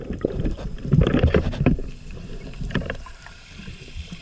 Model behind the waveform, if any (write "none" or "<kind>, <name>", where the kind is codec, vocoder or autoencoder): vocoder, BigVGAN v2